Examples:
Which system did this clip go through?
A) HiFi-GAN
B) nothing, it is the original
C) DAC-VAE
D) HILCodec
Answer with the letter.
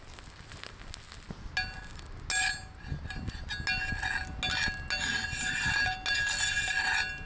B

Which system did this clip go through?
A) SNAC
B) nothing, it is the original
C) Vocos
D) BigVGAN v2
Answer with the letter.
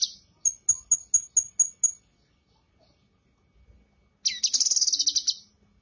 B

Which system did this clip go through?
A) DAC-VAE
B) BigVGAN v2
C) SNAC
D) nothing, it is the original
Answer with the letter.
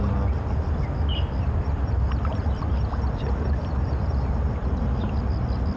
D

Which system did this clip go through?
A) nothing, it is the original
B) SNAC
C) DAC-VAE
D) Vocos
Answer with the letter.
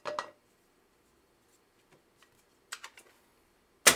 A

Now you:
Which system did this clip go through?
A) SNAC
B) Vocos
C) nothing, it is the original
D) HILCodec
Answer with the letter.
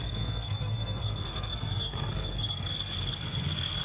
A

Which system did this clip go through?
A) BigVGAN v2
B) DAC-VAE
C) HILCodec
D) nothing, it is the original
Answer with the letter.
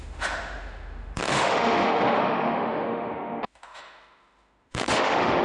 B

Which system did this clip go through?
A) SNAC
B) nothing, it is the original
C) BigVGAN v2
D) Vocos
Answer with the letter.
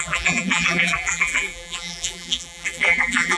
C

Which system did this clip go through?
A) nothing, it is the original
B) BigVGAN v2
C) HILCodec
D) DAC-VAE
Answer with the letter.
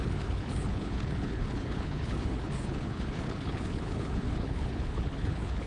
C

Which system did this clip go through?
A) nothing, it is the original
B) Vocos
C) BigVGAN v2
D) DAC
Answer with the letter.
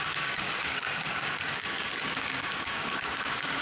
D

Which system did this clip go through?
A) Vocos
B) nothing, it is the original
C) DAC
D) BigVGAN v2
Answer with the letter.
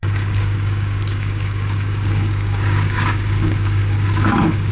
C